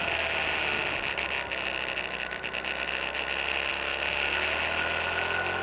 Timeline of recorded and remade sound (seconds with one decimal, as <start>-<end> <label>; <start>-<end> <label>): 0.0-5.6 recorded